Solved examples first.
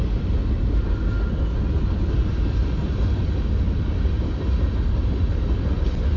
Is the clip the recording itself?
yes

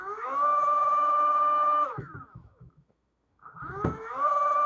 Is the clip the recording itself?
no